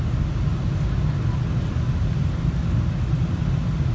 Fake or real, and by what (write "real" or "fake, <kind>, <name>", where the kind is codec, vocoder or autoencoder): real